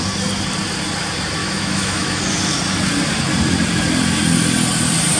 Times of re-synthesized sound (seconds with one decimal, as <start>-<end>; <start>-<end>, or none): 1.4-2.2